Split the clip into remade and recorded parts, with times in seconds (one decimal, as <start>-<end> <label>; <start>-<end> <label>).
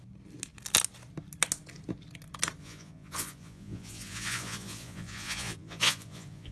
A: 0.0-2.6 recorded; 2.6-6.5 remade